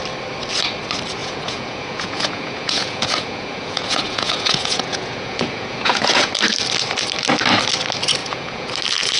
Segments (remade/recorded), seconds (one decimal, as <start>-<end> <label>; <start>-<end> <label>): 0.0-1.2 recorded; 1.2-6.3 remade; 6.3-8.2 recorded; 8.2-8.7 remade; 8.7-9.2 recorded